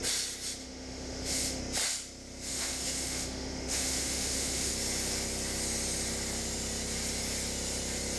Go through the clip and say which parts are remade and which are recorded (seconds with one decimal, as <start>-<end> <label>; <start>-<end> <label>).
0.0-0.6 recorded; 0.6-1.6 remade; 1.6-2.5 recorded; 2.5-4.7 remade; 4.7-8.2 recorded